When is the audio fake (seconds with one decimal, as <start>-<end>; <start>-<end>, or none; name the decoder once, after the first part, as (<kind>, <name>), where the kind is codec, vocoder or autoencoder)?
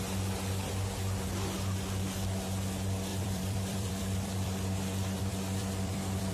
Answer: 3.1-6.3 (vocoder, BigVGAN v2)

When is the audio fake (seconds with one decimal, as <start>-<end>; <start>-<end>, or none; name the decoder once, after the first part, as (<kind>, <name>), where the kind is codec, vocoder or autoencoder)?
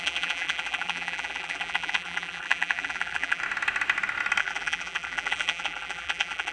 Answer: 0.0-3.4 (vocoder, BigVGAN v2); 4.4-6.5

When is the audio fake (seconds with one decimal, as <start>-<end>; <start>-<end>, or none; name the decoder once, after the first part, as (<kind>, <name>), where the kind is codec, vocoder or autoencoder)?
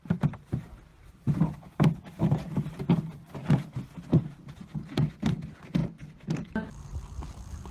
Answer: 0.9-1.4 (vocoder, BigVGAN v2)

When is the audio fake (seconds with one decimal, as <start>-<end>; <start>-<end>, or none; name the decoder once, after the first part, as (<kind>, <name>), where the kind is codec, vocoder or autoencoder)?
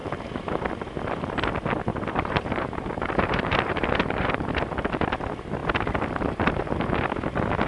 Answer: 1.9-4.5 (vocoder, BigVGAN v2)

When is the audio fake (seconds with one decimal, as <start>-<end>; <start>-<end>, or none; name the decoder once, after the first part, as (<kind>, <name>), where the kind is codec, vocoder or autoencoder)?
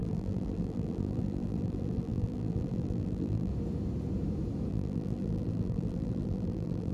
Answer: 0.0-3.5 (vocoder, BigVGAN v2); 4.7-6.9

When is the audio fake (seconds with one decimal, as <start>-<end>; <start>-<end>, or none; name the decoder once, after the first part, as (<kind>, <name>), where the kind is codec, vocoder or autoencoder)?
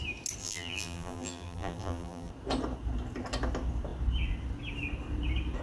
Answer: 0.4-2.3 (vocoder, BigVGAN v2)